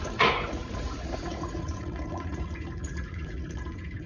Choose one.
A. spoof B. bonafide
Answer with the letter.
A